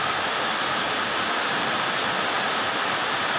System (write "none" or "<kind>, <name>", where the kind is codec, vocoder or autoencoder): none